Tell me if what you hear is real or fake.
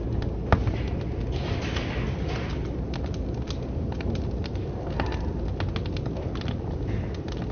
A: real